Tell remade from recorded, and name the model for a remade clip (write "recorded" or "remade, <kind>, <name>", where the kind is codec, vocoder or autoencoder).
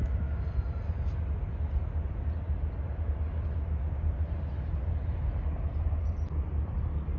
recorded